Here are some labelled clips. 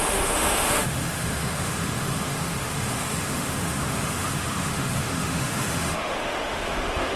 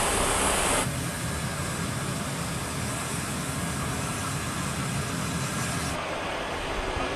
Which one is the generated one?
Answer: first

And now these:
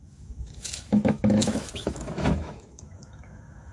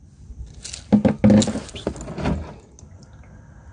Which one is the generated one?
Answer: first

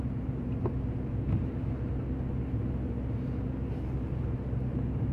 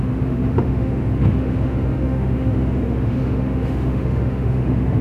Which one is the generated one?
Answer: second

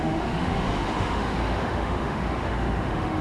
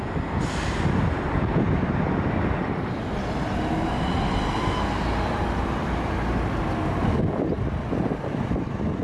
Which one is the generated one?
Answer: first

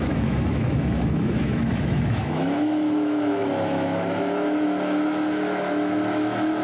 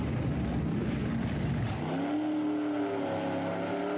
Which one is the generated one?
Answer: first